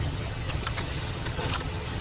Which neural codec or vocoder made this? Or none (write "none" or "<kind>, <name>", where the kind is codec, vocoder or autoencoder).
vocoder, HiFi-GAN